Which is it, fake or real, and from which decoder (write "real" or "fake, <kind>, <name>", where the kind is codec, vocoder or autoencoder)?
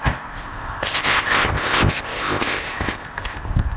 fake, codec, ZipCodec